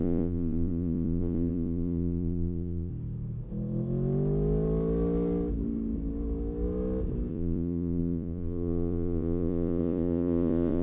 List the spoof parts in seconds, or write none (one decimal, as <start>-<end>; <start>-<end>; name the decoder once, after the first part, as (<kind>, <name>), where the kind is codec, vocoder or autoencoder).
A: 0.0-2.9 (vocoder, Vocos); 7.3-10.8